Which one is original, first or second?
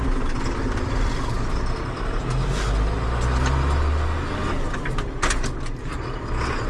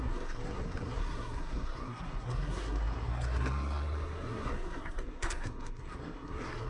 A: first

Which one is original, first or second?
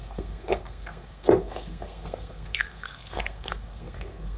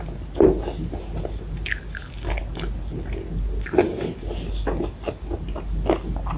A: second